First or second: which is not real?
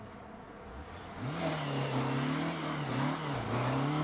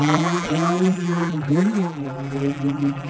second